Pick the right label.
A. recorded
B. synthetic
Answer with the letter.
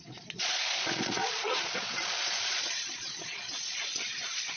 B